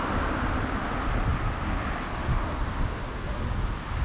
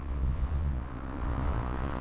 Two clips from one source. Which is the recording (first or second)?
first